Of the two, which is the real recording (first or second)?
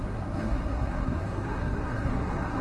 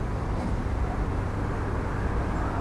second